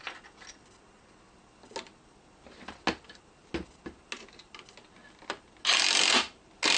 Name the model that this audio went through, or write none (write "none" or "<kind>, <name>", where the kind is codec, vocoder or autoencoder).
none